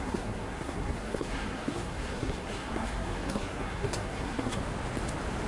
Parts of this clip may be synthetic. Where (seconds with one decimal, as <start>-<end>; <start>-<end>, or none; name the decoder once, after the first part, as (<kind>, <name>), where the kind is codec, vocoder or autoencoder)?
0.0-4.6 (codec, SNAC)